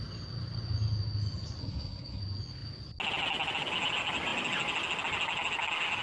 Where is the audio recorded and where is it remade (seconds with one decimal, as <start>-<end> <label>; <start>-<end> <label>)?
0.0-1.6 recorded; 1.6-2.2 remade; 2.2-6.0 recorded